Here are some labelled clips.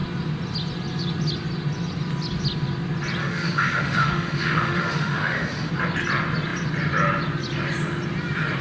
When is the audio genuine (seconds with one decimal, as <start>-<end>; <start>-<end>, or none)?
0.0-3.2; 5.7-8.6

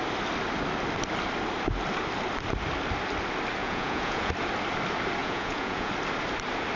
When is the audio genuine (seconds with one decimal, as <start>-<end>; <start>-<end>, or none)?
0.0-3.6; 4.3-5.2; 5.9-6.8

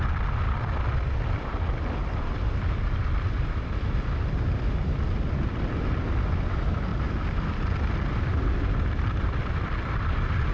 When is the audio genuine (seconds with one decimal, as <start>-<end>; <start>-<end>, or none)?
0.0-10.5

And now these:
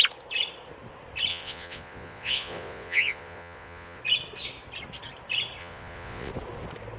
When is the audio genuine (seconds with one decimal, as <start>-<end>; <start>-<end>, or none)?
0.0-1.3; 4.0-5.6; 6.3-7.0

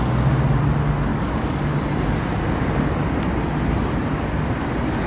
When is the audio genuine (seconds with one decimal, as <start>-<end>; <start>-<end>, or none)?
0.0-1.1; 1.8-5.1